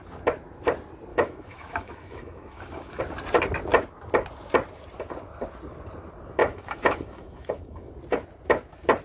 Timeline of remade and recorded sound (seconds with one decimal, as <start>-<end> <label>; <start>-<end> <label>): 0.0-1.1 recorded; 1.1-3.0 remade; 3.0-6.4 recorded; 6.4-7.9 remade; 7.9-9.0 recorded